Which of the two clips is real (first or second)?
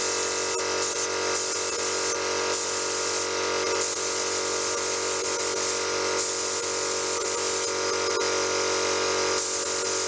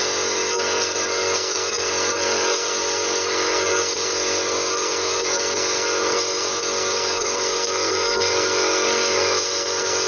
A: first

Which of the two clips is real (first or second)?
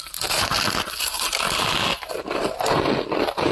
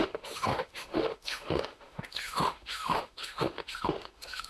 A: first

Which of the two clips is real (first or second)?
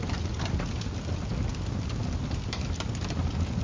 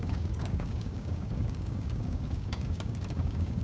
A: first